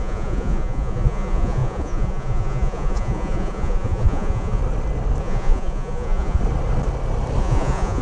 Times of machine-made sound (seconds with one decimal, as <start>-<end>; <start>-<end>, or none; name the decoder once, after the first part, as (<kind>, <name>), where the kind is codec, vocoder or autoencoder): 0.0-4.6 (vocoder, Vocos); 5.2-6.4; 7.4-8.0

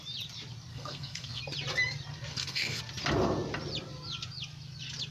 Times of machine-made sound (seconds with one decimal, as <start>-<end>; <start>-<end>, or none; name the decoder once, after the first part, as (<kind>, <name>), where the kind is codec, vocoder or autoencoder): 0.7-1.4 (codec, SNAC); 2.3-2.8

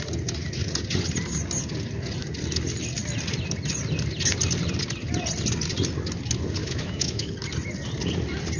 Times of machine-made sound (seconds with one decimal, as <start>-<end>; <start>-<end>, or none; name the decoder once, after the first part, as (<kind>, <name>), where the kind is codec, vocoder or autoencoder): 6.6-7.3 (autoencoder, DAC-VAE)

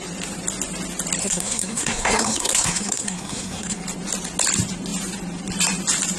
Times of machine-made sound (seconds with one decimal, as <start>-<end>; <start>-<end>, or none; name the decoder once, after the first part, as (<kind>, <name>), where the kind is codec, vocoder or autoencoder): 1.2-3.8 (codec, SNAC)

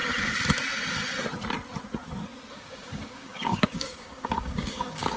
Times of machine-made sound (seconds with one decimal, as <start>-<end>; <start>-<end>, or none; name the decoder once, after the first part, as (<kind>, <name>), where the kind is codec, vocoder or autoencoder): 2.5-5.2 (codec, DAC)

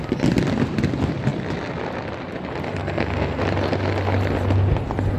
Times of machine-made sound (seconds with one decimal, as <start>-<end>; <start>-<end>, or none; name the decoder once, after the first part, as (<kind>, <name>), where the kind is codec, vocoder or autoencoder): 2.8-3.4 (codec, SNAC)

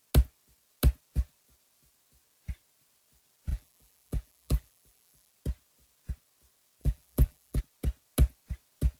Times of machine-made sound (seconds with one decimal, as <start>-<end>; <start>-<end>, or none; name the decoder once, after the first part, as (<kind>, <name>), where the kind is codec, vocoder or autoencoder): 3.5-5.3 (vocoder, BigVGAN v2); 6.8-7.6

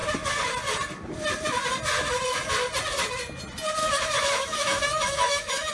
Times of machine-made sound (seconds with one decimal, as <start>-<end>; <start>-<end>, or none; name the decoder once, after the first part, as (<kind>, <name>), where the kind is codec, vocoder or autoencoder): 3.8-5.7 (autoencoder, DAC-VAE)